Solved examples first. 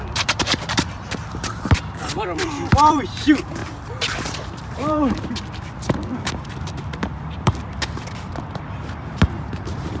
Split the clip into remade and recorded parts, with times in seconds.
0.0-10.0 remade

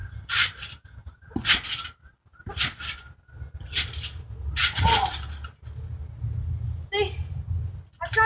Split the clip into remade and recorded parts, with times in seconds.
0.0-8.3 recorded

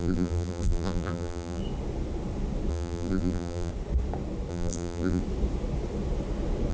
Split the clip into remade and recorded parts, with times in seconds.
0.0-1.6 remade; 1.6-2.7 recorded; 2.7-3.7 remade; 3.7-4.5 recorded; 4.5-5.2 remade; 5.2-6.7 recorded

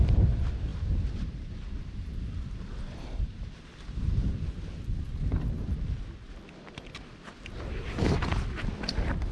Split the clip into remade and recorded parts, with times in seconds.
0.0-0.7 recorded; 0.7-3.5 remade; 3.5-9.3 recorded

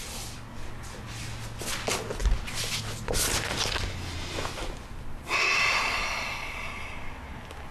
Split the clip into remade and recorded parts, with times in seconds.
0.0-7.7 recorded

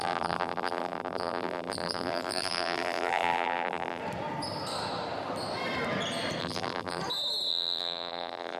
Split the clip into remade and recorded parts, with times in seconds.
0.0-4.0 remade; 4.0-6.4 recorded; 6.4-7.0 remade; 7.0-7.5 recorded; 7.5-8.6 remade

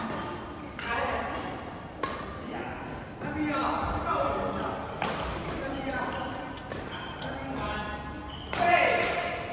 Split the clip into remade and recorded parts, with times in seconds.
0.0-5.3 recorded; 5.3-7.3 remade; 7.3-9.5 recorded

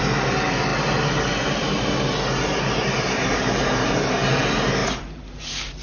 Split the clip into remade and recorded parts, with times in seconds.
0.0-4.8 recorded; 4.8-5.8 remade